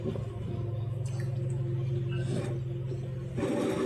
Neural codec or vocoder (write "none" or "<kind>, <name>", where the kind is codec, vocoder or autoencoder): none